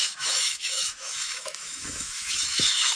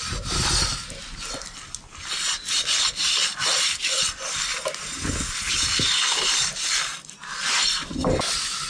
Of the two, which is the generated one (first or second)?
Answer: first